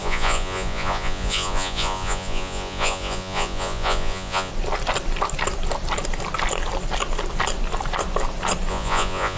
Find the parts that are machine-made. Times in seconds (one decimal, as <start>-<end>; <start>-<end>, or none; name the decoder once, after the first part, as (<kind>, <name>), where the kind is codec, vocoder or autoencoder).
0.0-4.5 (vocoder, Vocos); 8.7-9.4

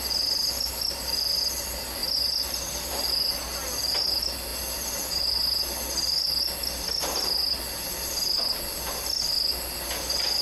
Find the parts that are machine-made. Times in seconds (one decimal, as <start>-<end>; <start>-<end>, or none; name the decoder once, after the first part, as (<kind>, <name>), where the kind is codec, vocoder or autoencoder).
none